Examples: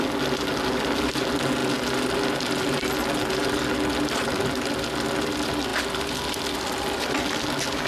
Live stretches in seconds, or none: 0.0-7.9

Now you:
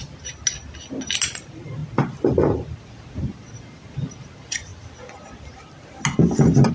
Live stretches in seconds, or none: 0.0-6.7

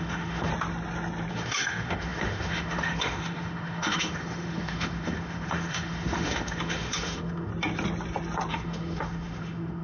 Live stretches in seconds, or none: 0.5-1.3; 7.5-8.5

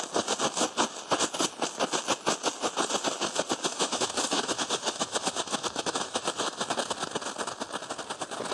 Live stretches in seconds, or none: 0.0-3.7; 6.7-8.5

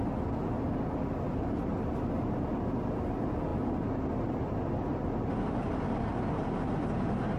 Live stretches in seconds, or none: 0.0-7.4

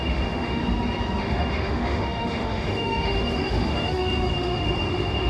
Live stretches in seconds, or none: 0.6-1.2